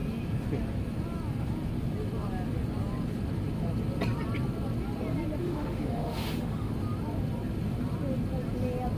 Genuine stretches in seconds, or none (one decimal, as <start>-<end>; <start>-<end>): 0.0-5.4; 6.7-9.0